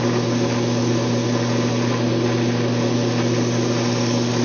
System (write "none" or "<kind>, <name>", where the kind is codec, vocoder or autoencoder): none